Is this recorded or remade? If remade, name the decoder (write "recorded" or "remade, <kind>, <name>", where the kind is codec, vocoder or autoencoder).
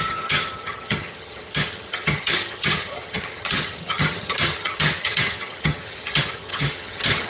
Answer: remade, vocoder, HiFi-GAN